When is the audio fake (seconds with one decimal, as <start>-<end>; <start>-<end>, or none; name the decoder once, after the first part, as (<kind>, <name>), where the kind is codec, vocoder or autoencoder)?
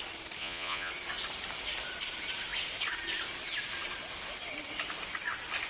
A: 0.4-0.9 (vocoder, Vocos)